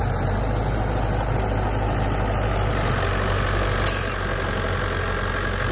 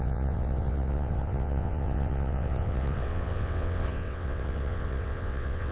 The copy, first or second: second